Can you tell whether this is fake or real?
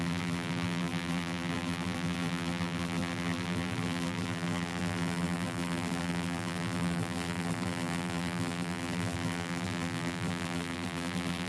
fake